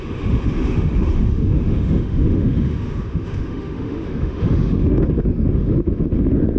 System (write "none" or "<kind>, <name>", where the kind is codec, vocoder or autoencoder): autoencoder, DAC-VAE